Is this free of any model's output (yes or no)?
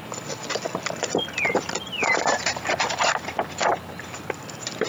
yes